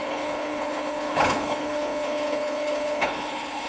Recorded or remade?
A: remade